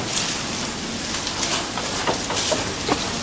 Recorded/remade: recorded